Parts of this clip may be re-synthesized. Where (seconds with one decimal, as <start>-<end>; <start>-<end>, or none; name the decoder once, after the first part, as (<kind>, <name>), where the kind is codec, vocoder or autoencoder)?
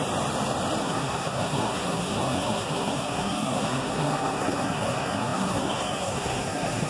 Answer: 0.8-6.9 (codec, SNAC)